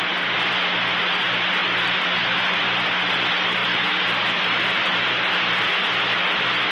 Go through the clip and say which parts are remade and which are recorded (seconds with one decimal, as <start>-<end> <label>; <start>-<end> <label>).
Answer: 0.0-6.7 recorded